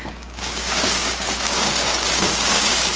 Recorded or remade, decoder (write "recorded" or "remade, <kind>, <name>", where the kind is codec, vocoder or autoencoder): remade, codec, DAC